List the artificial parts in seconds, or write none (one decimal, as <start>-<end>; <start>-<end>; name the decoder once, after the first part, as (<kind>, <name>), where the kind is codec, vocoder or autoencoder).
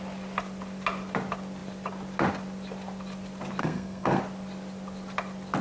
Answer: 3.6-4.2 (codec, SNAC)